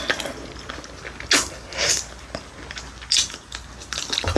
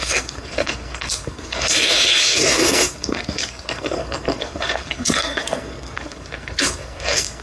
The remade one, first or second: second